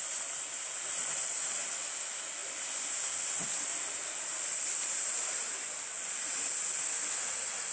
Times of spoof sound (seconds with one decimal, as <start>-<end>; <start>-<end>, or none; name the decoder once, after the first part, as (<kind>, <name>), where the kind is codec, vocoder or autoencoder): none